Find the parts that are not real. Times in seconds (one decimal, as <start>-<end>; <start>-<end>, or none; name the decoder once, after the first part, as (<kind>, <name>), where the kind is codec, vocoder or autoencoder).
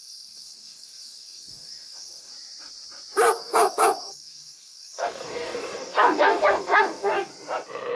0.0-2.3 (codec, DAC); 3.4-7.3